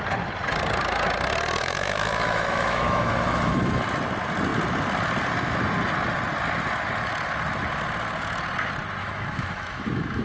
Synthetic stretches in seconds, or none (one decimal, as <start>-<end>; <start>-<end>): 1.6-3.8; 9.0-10.2